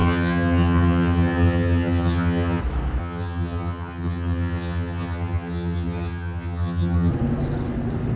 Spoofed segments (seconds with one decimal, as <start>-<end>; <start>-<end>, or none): 0.0-2.6; 3.0-7.1